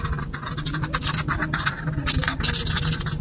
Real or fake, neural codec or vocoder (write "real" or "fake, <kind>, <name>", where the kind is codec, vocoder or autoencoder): real